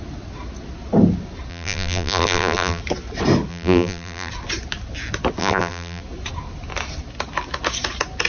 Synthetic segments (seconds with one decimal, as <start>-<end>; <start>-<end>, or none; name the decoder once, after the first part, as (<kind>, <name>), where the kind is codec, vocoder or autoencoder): 1.5-2.8 (vocoder, BigVGAN v2); 3.5-4.3; 5.4-6.0